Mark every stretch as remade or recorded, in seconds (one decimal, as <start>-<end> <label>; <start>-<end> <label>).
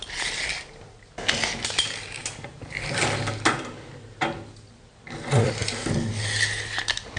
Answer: 0.0-7.2 recorded